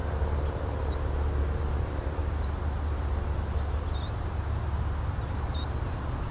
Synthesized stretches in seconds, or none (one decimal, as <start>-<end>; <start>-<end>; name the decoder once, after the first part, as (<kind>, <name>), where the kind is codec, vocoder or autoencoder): 1.8-2.2 (vocoder, BigVGAN v2); 5.8-6.3